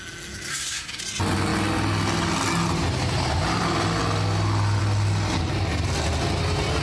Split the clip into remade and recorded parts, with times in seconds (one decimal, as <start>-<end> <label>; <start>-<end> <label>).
0.0-0.5 recorded; 0.5-1.0 remade; 1.0-6.8 recorded